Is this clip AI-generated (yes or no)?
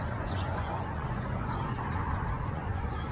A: yes